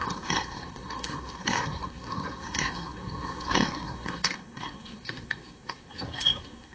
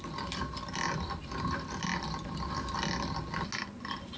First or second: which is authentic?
second